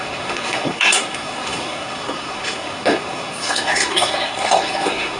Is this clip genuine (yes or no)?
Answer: no